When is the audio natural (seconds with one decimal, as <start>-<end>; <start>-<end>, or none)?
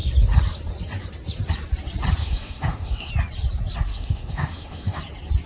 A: 0.0-2.2; 3.1-3.9; 5.0-5.5